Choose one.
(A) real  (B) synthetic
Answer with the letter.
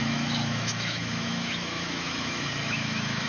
B